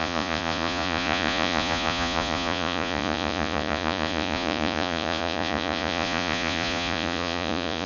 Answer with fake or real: fake